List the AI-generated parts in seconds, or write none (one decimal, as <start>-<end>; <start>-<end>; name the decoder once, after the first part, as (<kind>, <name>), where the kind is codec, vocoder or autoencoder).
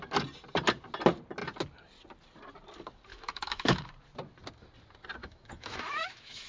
3.1-3.9 (autoencoder, DAC-VAE); 5.2-6.5